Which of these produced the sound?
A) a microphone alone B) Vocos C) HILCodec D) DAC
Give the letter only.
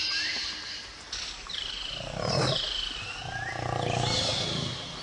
A